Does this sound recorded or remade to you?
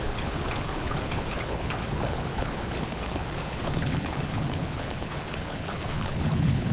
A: remade